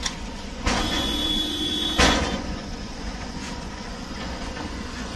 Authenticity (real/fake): fake